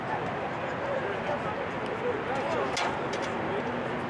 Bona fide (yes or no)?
yes